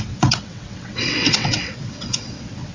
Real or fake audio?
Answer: fake